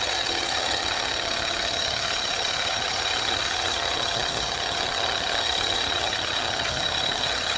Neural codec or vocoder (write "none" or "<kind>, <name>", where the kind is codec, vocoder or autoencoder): vocoder, HiFi-GAN